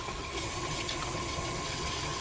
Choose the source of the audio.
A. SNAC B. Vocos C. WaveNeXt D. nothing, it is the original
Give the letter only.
C